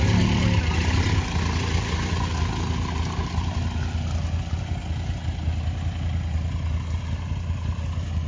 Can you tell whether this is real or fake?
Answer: real